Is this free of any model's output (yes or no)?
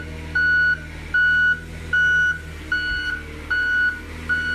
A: yes